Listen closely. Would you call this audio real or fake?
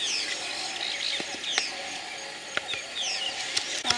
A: real